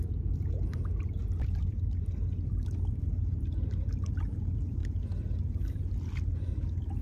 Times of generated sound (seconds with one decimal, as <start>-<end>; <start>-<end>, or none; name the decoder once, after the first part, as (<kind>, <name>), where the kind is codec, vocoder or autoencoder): none